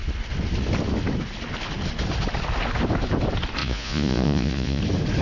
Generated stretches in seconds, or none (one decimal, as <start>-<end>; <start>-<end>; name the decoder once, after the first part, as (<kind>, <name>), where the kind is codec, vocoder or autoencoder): 3.6-4.8 (vocoder, Vocos)